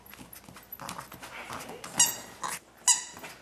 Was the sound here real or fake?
real